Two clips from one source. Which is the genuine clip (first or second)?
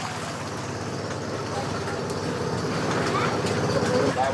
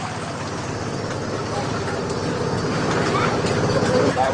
first